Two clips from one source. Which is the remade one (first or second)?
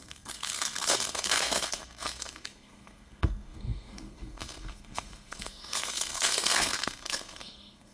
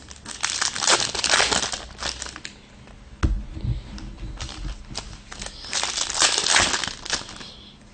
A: first